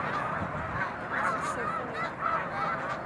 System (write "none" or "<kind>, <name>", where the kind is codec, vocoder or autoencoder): none